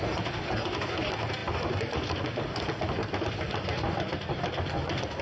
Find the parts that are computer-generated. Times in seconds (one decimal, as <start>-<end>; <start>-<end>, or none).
none